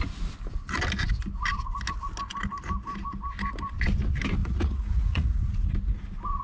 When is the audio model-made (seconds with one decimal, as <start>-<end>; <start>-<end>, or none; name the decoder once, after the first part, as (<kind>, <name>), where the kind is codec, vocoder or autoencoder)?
4.4-5.7 (vocoder, Vocos)